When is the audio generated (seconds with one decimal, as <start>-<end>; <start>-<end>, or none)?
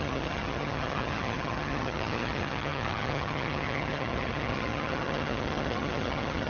0.0-6.5